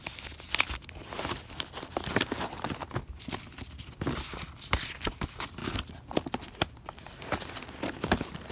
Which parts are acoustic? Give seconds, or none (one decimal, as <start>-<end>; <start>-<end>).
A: 0.0-8.5